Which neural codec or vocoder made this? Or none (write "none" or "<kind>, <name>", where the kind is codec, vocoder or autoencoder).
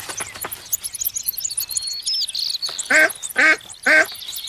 none